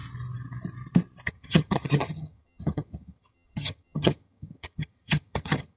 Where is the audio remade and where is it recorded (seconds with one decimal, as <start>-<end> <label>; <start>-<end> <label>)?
0.0-1.3 recorded; 1.3-5.8 remade